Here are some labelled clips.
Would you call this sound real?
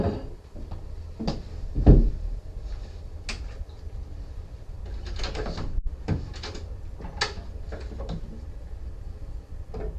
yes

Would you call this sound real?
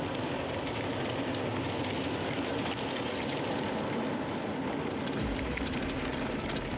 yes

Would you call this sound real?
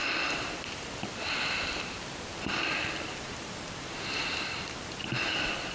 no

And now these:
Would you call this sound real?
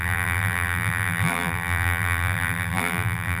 no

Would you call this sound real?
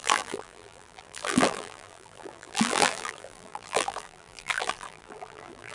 no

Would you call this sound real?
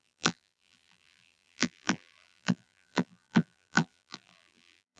no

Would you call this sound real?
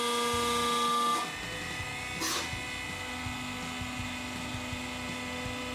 yes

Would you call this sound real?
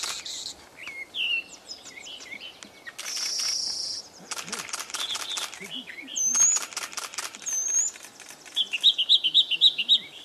yes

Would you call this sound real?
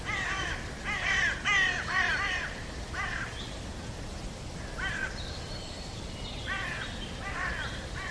yes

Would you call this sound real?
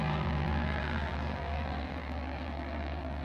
no